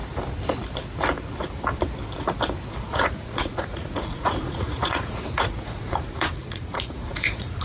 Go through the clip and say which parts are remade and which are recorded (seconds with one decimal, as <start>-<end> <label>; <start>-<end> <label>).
0.0-2.8 recorded; 2.8-7.6 remade